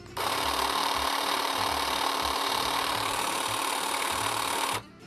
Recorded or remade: remade